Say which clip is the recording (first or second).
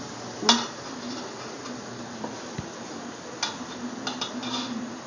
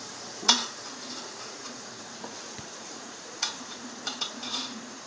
first